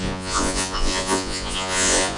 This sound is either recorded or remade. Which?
remade